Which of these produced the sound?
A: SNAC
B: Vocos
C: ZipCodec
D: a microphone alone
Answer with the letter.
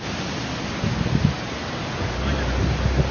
D